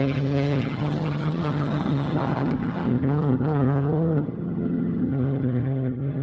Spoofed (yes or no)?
yes